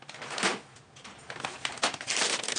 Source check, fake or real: real